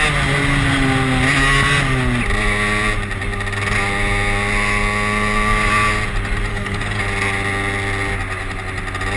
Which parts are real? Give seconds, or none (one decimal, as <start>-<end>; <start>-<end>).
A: 0.0-6.5; 7.0-9.2